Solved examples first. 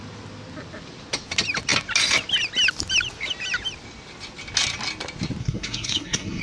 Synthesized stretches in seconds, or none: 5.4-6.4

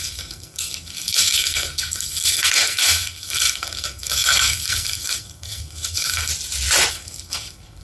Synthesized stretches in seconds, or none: 0.0-6.3; 6.9-7.8

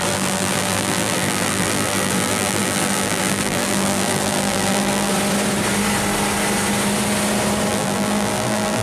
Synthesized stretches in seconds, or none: 0.0-5.1; 7.7-8.8

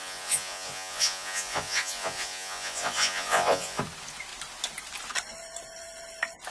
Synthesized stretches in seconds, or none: 0.0-3.8

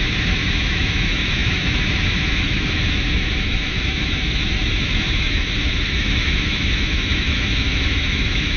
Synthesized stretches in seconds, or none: 0.0-8.6

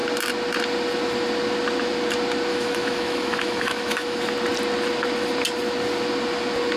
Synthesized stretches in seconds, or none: 2.5-4.2